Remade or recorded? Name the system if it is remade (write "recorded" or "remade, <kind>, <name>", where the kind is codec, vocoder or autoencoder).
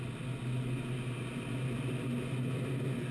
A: recorded